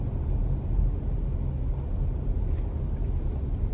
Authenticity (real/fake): real